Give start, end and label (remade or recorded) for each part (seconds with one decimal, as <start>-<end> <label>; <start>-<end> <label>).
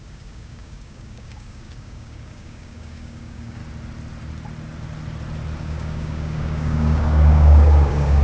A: 0.0-3.6 remade; 3.6-5.6 recorded; 5.6-8.2 remade